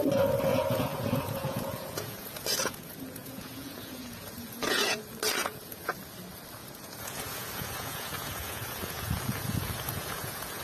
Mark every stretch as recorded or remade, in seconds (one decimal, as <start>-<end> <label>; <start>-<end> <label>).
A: 0.0-0.5 recorded; 0.5-5.0 remade; 5.0-5.4 recorded; 5.4-5.9 remade; 5.9-6.6 recorded; 6.6-10.6 remade